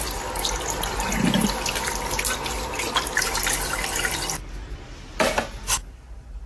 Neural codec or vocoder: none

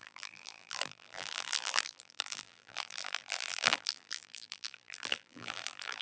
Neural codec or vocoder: vocoder, BigVGAN v2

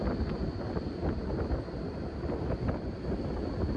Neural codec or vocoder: none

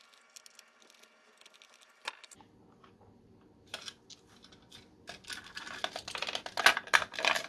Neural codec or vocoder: none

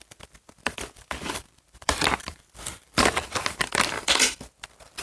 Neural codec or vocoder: vocoder, BigVGAN v2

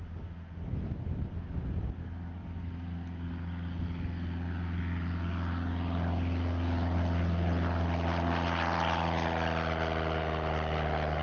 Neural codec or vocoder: none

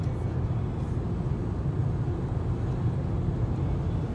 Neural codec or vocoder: none